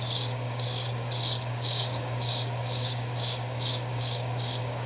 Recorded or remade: remade